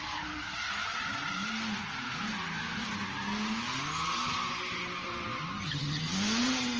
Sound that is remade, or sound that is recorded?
recorded